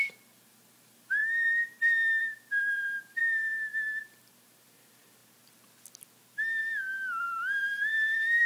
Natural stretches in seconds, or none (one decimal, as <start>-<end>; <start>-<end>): 3.2-4.0; 5.2-7.2